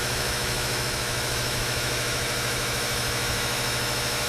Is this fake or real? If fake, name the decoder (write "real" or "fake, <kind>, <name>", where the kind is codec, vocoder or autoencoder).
fake, autoencoder, DAC-VAE